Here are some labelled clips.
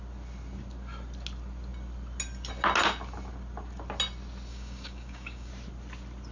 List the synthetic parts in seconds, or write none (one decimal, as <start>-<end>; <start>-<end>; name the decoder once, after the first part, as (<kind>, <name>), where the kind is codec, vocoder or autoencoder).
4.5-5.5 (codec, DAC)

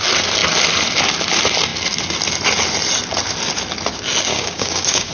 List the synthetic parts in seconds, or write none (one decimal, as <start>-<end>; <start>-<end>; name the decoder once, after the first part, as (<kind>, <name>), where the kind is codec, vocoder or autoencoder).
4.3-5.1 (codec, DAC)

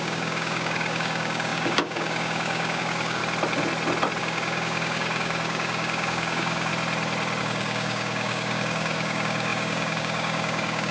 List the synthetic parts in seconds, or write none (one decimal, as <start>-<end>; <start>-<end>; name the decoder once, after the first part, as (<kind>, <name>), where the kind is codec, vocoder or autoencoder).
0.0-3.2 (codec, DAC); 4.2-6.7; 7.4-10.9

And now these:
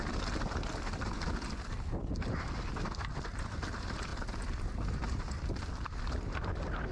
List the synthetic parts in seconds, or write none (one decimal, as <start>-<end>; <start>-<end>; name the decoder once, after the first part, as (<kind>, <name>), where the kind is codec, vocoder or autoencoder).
none